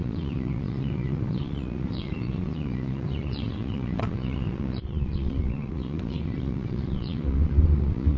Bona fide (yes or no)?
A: no